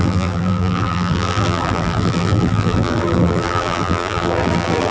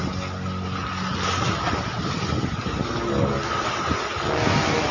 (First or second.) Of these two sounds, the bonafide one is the second